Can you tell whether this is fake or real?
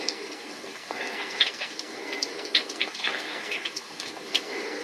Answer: fake